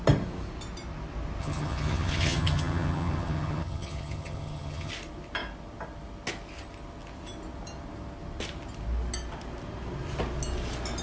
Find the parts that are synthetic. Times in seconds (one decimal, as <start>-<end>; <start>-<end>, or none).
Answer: 1.4-4.9